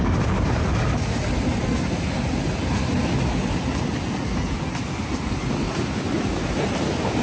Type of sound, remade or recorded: recorded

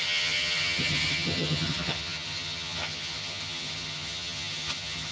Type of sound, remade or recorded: remade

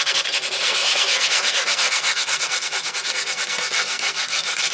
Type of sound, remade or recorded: remade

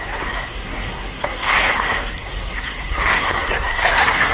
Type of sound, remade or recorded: remade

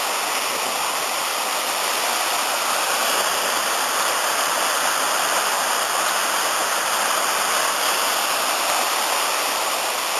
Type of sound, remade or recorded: recorded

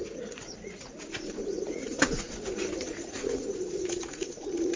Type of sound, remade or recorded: remade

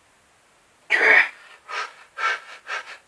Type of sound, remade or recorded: recorded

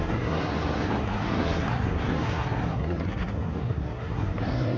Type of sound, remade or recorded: remade